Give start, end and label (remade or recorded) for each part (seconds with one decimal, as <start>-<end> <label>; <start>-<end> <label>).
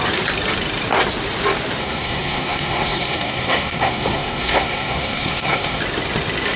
0.0-1.8 recorded; 1.8-5.8 remade; 5.8-6.6 recorded